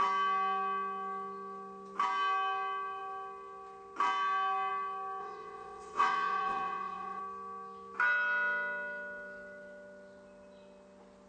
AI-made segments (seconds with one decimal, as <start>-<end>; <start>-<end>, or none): 5.2-7.2